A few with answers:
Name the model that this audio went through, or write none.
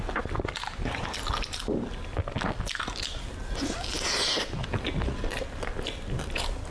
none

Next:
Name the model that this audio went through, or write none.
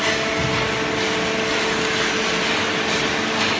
none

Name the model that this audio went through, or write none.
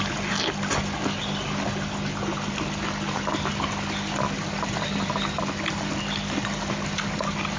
none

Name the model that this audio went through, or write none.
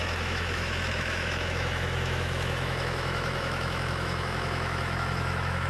autoencoder, DAC-VAE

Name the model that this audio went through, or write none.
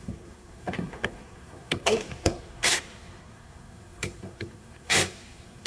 codec, SNAC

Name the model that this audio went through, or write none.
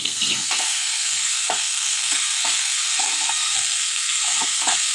codec, SNAC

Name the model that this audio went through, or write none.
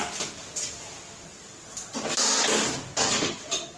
none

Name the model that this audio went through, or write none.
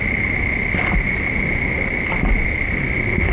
none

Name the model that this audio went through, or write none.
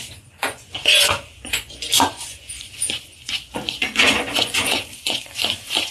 vocoder, Vocos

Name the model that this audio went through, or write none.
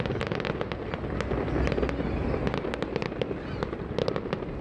none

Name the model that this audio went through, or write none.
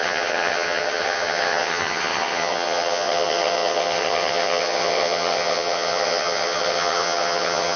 vocoder, HiFi-GAN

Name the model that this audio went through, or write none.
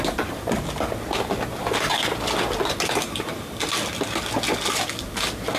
none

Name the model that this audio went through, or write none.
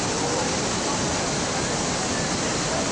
none